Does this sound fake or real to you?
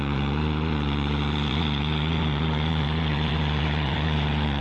fake